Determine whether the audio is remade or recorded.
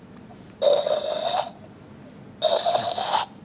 recorded